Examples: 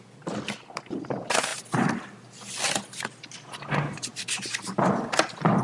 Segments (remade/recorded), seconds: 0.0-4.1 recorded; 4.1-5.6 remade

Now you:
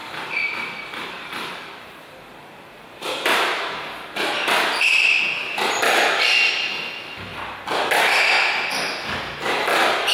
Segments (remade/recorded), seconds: 0.0-5.2 remade; 5.2-10.1 recorded